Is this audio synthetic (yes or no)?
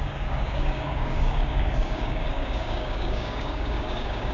yes